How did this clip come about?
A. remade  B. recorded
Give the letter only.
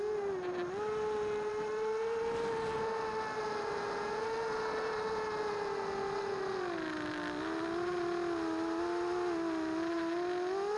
B